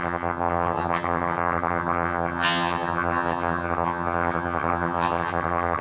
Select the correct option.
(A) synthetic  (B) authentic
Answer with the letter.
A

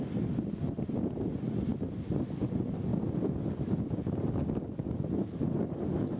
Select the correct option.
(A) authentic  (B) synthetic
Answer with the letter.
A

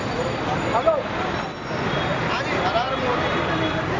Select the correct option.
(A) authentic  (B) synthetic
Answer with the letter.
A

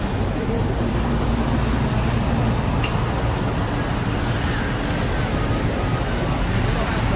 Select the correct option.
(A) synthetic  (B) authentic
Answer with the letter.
B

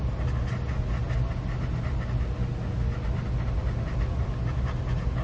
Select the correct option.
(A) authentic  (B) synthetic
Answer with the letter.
A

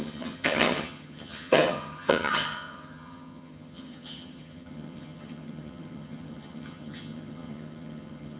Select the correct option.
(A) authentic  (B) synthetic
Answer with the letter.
B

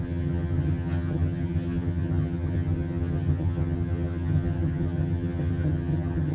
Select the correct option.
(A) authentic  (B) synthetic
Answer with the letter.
B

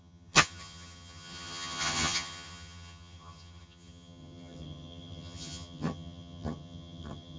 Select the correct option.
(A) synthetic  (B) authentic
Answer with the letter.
A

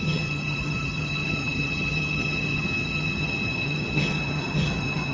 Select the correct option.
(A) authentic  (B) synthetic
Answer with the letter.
B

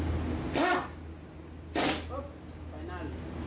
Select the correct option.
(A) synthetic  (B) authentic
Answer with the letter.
B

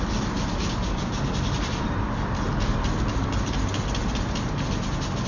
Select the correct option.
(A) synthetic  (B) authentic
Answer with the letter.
B